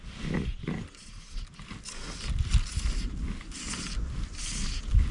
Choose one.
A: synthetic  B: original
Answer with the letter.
B